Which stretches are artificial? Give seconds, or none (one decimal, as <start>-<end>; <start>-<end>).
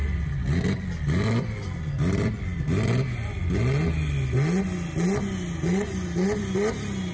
none